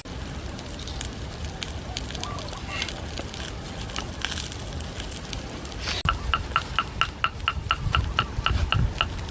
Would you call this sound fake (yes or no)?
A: no